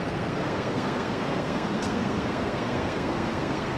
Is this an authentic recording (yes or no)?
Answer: no